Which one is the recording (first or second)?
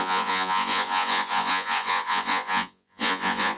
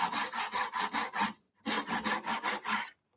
second